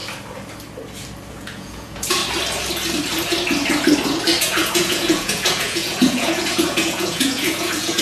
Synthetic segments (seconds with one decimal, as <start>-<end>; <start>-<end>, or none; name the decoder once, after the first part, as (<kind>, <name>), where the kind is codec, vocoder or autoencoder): 1.3-2.2 (vocoder, Vocos); 4.4-8.0